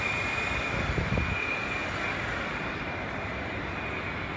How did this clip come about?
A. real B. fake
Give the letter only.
A